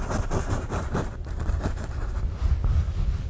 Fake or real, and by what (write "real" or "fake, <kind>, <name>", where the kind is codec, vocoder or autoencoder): real